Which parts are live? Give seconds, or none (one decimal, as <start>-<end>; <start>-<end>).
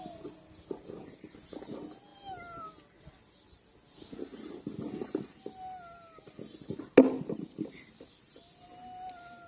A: 0.0-9.5